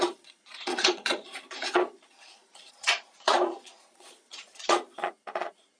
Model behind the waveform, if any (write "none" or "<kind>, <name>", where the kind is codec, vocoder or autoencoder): vocoder, Vocos